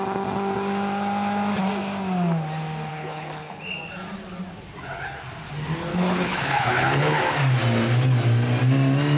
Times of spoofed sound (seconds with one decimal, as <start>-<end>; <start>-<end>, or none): 2.9-3.6; 5.9-7.2